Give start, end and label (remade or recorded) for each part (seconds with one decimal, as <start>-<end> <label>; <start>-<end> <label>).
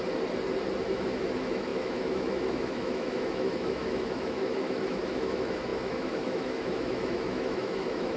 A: 0.0-0.8 recorded; 0.8-8.2 remade